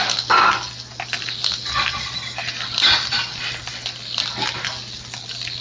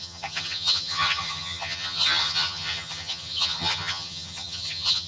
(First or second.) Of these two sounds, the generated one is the second